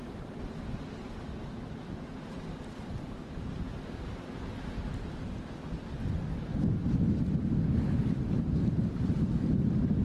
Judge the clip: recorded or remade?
recorded